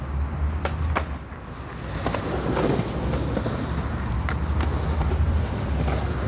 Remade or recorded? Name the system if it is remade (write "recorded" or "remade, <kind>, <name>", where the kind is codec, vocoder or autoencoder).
recorded